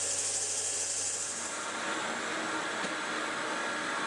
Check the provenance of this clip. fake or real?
real